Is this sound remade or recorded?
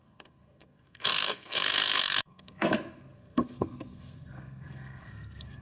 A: remade